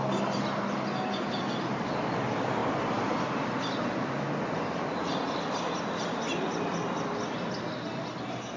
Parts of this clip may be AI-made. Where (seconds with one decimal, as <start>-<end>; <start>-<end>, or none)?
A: none